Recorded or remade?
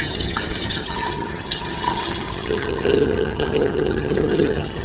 remade